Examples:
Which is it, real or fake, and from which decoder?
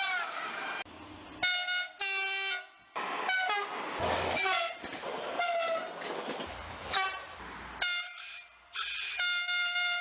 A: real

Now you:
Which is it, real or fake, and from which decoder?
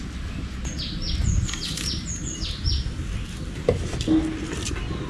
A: real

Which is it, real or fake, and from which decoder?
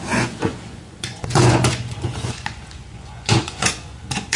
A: fake, vocoder, Vocos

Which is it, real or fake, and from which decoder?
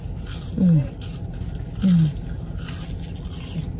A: real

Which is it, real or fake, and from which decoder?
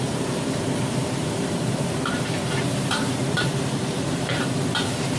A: fake, vocoder, BigVGAN v2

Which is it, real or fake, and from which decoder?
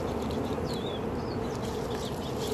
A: real